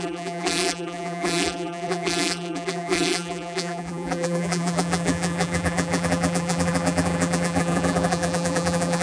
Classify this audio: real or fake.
fake